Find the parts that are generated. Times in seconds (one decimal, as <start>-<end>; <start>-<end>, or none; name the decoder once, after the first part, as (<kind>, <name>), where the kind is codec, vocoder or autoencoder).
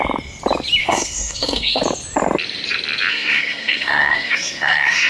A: 0.8-1.8 (codec, SNAC); 3.1-5.1